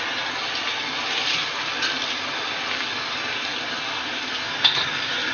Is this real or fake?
real